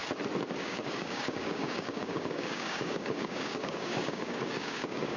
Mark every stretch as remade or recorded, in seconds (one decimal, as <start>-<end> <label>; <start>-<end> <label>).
0.0-0.6 recorded; 0.6-5.2 remade